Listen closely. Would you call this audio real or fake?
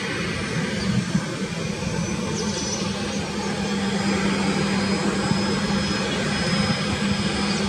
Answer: real